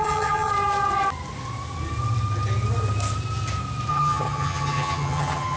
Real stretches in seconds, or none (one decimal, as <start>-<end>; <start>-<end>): 0.5-3.9